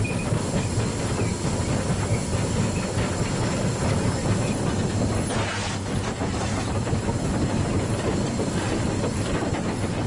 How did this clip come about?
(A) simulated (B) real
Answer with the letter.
B